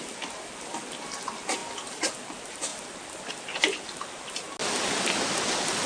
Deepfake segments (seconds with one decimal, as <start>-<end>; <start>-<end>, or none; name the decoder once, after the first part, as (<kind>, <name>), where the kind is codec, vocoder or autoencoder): none